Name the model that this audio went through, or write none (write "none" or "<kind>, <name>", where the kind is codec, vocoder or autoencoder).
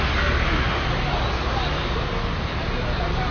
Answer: none